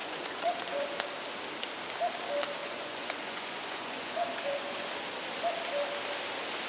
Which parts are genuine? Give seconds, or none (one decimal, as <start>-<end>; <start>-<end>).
1.0-2.6; 4.9-6.7